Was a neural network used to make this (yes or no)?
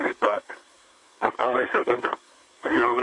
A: yes